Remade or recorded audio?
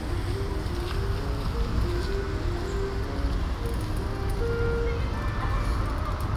recorded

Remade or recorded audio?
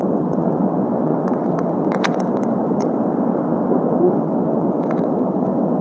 remade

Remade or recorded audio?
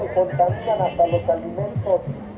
recorded